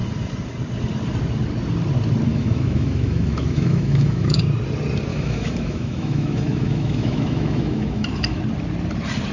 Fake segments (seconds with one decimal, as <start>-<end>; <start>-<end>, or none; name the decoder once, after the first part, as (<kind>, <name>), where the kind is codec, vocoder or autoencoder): 2.3-4.4 (autoencoder, DAC-VAE); 5.1-8.4